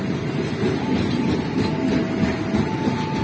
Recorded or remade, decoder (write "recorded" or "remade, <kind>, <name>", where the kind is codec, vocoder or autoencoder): recorded